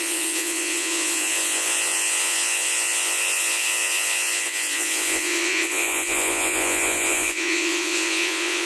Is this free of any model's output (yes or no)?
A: no